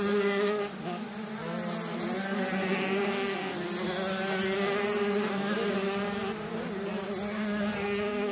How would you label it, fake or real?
real